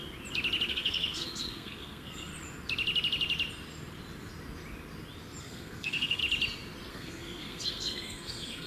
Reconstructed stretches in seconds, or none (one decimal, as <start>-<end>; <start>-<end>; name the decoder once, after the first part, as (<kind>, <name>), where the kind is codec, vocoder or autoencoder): 0.7-2.3 (codec, SNAC); 5.4-6.2; 6.9-8.7